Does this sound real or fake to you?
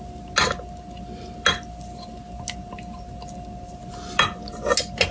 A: real